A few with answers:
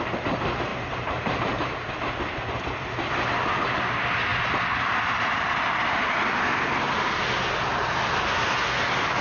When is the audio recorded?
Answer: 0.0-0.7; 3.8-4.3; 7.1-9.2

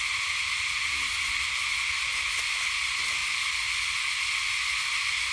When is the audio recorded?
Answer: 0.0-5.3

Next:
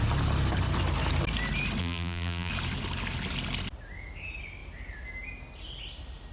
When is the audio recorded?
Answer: 0.0-1.8; 2.5-6.3

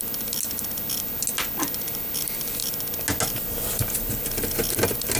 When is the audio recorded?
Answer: 0.0-5.2

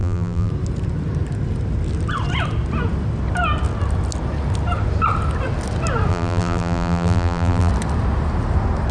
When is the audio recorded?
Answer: 0.5-6.1; 7.7-8.9

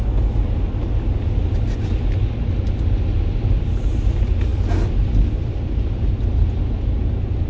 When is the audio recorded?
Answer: 0.0-7.5

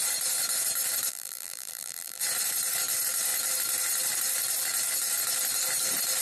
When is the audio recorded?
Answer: 0.0-1.1; 2.2-6.2

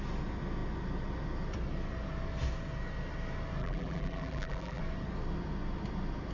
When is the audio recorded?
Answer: 0.0-3.6; 4.8-6.3